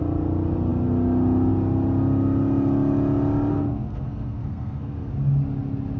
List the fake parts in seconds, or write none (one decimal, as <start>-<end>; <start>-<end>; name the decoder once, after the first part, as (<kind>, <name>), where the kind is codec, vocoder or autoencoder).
3.5-5.1 (codec, SNAC)